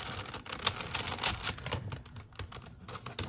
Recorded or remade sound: recorded